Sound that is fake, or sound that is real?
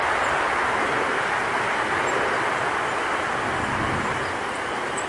real